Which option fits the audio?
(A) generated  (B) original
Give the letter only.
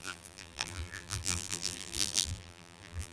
A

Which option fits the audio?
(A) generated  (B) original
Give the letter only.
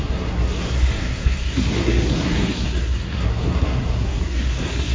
A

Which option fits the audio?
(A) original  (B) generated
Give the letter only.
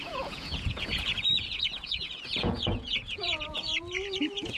B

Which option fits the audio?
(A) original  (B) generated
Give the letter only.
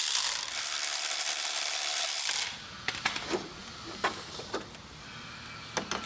A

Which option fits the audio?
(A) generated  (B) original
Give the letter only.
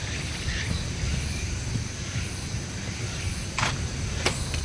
B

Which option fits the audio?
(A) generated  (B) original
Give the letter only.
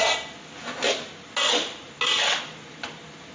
B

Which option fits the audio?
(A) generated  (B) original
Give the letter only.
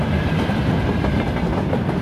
A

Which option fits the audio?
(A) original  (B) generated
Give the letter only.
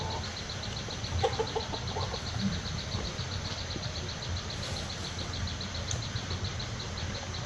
A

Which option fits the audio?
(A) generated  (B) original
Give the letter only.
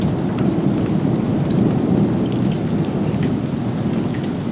B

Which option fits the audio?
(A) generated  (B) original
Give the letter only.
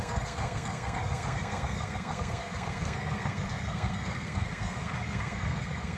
A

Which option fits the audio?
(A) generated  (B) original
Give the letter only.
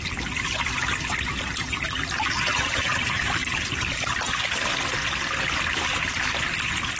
A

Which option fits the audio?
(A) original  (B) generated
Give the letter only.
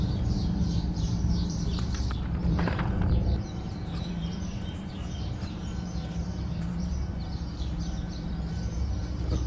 B